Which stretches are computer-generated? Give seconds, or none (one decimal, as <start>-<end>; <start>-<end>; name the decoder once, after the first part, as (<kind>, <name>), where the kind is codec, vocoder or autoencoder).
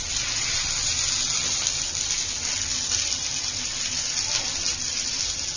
none